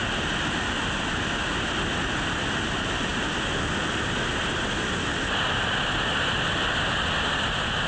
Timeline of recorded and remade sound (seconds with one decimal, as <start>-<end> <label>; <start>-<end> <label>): 0.0-7.9 recorded